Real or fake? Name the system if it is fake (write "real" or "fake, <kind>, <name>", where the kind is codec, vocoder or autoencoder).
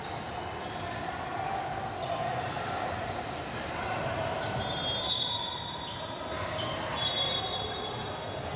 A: real